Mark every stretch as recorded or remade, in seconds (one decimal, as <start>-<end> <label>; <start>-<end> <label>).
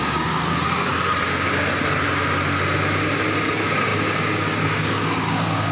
0.0-0.9 remade; 0.9-3.5 recorded; 3.5-5.7 remade